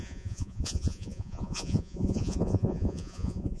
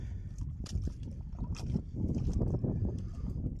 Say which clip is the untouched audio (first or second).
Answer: second